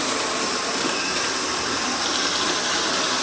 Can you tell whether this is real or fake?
real